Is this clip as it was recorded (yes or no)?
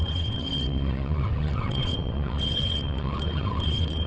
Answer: no